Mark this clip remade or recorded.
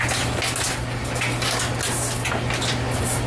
recorded